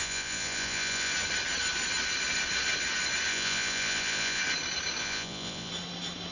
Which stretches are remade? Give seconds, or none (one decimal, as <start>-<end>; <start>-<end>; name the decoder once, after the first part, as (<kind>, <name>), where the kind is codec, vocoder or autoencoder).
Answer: 0.0-1.1 (vocoder, Vocos); 3.3-4.4; 5.0-5.7